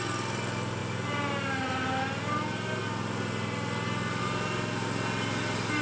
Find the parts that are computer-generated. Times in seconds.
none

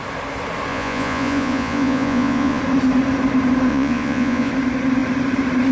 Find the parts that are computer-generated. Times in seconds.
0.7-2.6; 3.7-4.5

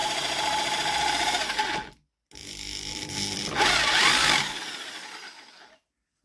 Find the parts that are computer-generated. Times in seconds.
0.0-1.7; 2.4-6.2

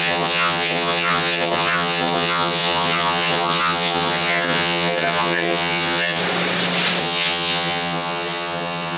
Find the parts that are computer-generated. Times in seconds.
0.0-6.2; 7.0-9.0